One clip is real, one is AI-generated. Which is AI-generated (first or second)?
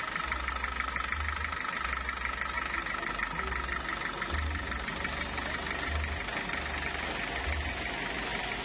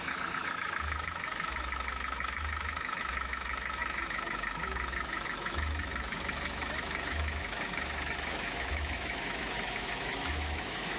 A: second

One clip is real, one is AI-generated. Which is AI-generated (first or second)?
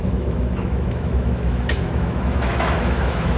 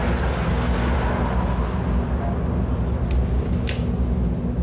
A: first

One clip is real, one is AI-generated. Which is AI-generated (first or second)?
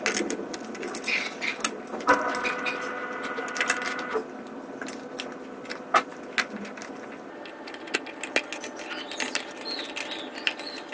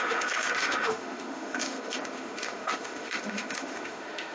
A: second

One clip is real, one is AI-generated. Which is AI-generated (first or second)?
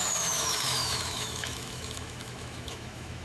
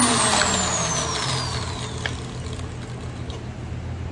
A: first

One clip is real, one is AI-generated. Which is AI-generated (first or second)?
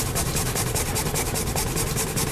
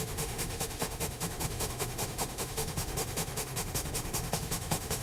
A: second